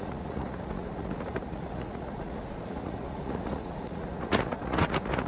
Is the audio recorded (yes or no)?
no